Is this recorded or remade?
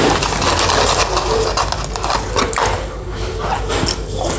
recorded